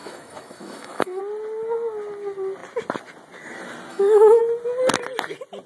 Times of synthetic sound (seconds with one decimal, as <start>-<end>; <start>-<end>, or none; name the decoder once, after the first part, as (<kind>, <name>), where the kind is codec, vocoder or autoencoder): 0.0-1.2 (autoencoder, DAC-VAE); 3.9-4.4